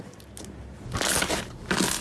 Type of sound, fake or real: real